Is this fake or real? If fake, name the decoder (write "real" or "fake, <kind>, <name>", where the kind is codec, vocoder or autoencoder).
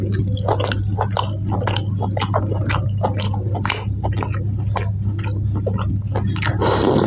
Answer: real